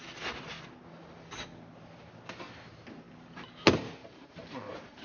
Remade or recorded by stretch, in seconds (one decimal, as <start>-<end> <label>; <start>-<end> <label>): 0.0-4.0 recorded; 4.0-5.0 remade